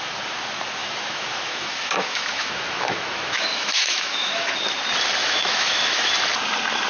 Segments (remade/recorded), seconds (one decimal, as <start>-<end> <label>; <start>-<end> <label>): 0.0-0.8 recorded; 0.8-4.5 remade; 4.5-5.2 recorded; 5.2-6.1 remade; 6.1-6.9 recorded